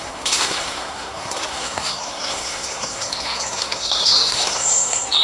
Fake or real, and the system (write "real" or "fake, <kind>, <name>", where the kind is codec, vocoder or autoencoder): fake, codec, SNAC